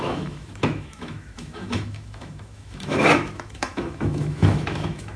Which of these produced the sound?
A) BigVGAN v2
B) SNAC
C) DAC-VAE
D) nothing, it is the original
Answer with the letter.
C